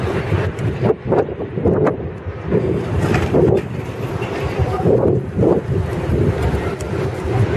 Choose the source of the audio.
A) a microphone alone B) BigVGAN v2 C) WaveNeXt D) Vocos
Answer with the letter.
B